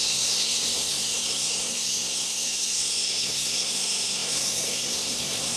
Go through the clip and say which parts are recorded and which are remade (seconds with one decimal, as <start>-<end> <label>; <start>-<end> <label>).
0.0-5.6 remade

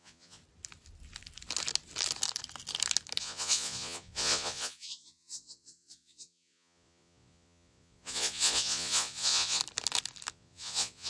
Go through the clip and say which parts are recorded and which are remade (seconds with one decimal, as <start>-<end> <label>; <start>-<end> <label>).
0.0-0.4 remade; 0.4-3.2 recorded; 3.2-9.6 remade; 9.6-10.3 recorded; 10.3-11.1 remade

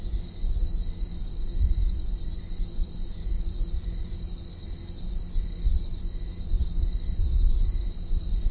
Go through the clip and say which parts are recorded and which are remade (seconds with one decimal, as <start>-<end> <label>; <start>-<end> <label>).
0.0-8.5 recorded

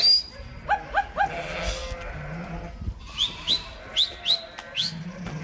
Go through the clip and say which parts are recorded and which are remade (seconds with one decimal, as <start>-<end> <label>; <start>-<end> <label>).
0.0-5.4 recorded

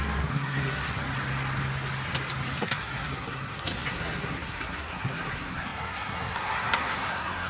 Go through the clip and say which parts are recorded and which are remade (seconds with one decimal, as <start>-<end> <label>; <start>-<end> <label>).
0.0-1.0 remade; 1.0-2.6 recorded; 2.6-7.5 remade